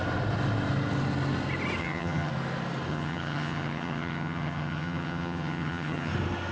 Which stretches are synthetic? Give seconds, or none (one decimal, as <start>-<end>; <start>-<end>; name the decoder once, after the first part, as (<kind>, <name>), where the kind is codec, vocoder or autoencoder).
1.8-2.3 (vocoder, HiFi-GAN); 2.9-6.1

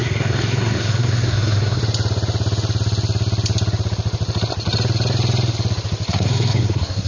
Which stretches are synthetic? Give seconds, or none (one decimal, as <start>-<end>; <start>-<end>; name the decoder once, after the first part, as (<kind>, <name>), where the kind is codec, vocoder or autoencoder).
0.0-1.8 (codec, SNAC); 6.1-7.1

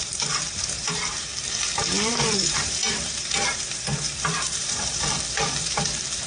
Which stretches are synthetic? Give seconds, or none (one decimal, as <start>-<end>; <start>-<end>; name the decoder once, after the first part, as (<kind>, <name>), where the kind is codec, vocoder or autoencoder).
0.0-1.3 (vocoder, BigVGAN v2); 2.1-6.3

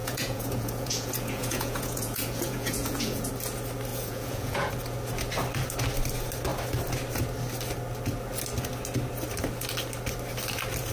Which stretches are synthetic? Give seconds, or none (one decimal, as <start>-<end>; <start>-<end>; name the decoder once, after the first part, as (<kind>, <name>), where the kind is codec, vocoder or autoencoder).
0.0-3.3 (vocoder, Vocos); 3.9-4.7

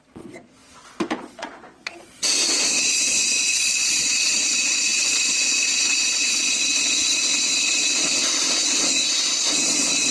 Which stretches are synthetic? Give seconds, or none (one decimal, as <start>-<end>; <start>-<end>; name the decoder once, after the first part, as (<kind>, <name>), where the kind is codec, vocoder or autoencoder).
0.0-10.1 (vocoder, Vocos)

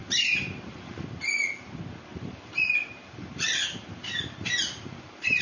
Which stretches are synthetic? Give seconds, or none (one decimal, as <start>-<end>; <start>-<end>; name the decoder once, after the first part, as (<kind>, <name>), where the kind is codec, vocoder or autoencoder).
0.0-1.1 (vocoder, BigVGAN v2); 2.1-5.4